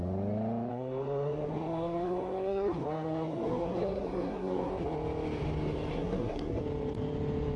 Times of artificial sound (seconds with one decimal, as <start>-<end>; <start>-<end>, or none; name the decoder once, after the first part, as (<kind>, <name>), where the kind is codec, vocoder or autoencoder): 0.7-4.7 (codec, SNAC); 5.9-6.6